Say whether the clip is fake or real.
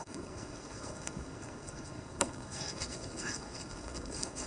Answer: fake